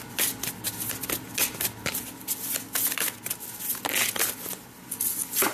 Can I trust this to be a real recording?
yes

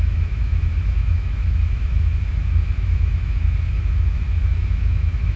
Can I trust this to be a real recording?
no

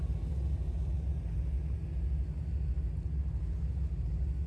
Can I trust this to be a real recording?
yes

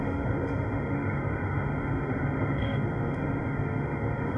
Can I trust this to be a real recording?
no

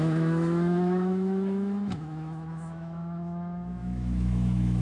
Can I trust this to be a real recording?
no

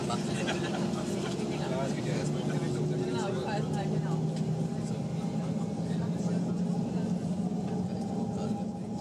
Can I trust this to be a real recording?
yes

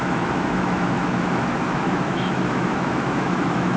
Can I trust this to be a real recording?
no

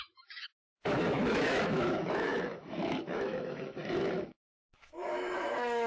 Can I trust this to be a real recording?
no